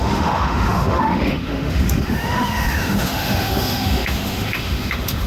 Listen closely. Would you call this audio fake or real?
fake